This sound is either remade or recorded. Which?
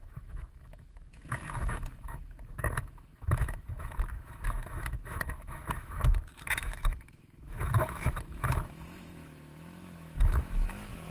remade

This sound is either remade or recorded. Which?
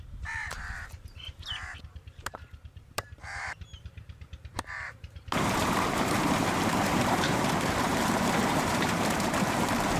remade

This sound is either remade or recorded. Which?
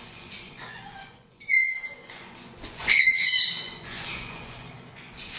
remade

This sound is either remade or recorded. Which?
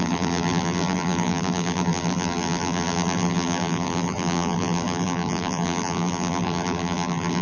remade